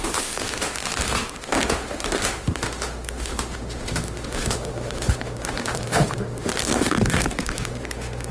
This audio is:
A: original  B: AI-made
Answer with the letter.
B